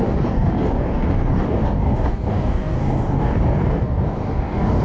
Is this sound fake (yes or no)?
yes